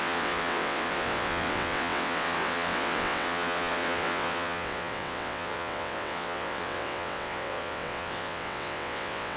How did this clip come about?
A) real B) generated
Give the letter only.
B